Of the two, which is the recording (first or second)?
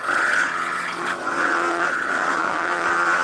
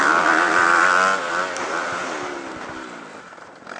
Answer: second